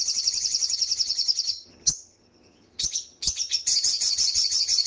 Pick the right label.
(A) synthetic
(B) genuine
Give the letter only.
A